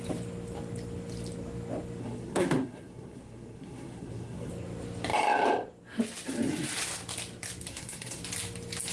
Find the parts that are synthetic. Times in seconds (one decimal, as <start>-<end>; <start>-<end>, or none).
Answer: 2.0-4.5; 7.7-8.2